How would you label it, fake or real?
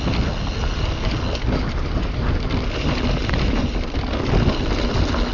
real